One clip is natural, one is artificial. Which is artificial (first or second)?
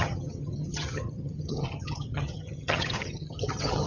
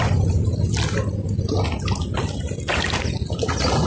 first